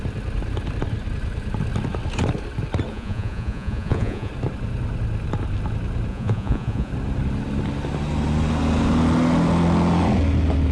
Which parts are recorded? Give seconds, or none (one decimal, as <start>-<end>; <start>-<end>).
0.0-2.9; 4.3-6.1; 6.9-10.7